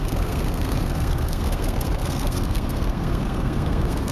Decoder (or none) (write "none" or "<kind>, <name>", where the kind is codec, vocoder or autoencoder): codec, SNAC